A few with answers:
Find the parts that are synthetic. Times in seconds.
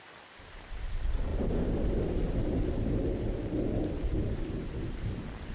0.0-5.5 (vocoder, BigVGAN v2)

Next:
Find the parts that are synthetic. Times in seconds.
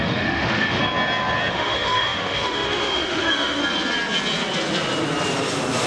0.0-0.8 (autoencoder, DAC-VAE); 1.5-3.6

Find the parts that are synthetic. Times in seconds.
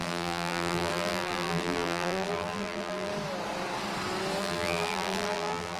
0.0-3.1 (vocoder, BigVGAN v2); 4.4-5.8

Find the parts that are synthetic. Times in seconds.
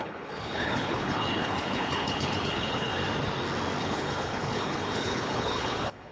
0.0-2.9 (codec, HILCodec); 3.8-6.1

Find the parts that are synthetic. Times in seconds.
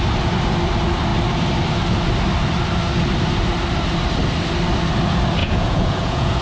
5.4-6.4 (vocoder, Vocos)